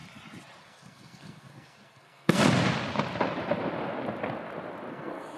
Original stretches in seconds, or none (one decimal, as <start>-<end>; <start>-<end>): 0.0-0.6; 2.4-4.9